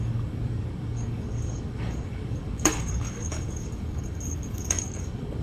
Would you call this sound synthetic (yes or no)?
yes